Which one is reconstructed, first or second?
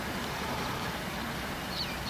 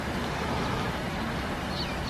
second